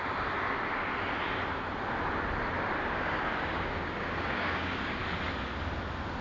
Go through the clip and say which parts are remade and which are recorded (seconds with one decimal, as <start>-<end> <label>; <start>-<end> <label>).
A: 0.0-2.8 recorded; 2.8-5.0 remade; 5.0-6.2 recorded